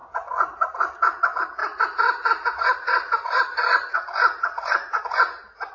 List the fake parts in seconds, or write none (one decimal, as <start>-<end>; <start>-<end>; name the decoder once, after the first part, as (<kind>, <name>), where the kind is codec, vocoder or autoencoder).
none

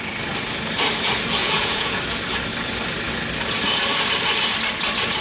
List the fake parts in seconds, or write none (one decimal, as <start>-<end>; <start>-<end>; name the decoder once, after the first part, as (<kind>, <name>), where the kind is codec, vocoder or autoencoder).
1.4-2.0 (vocoder, Vocos)

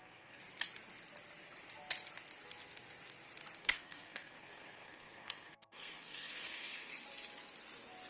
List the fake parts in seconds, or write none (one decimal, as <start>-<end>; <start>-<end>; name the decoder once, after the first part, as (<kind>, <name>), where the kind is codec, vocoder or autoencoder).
0.0-0.4 (codec, SNAC); 3.6-6.9

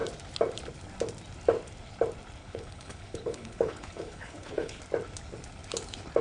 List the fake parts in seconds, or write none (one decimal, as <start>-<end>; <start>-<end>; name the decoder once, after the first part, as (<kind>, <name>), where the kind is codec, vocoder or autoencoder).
2.4-4.8 (codec, HILCodec)